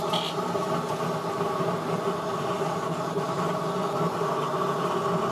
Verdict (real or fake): real